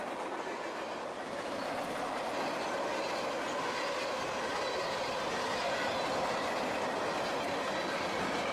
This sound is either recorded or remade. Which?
recorded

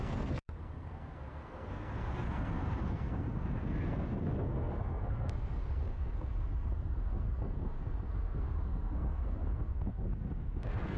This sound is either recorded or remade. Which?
remade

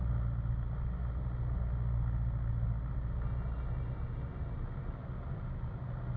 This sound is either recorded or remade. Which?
recorded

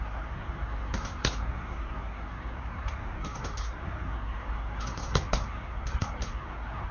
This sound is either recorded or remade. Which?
remade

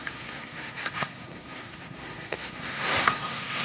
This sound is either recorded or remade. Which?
remade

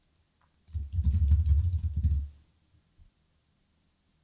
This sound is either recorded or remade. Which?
recorded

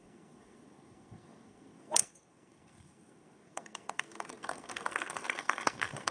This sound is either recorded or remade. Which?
remade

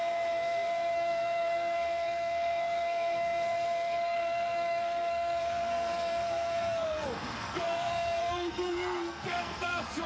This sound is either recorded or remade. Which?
remade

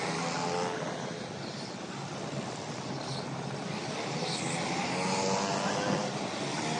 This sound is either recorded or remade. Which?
recorded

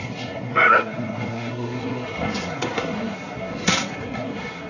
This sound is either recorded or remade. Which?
remade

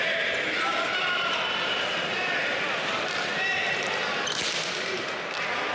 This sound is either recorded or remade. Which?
recorded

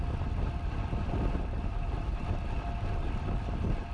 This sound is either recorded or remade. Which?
recorded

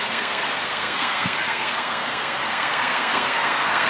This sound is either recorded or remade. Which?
remade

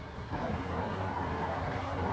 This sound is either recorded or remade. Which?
remade